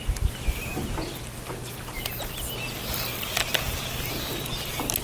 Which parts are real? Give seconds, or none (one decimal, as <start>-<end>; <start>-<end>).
0.0-5.0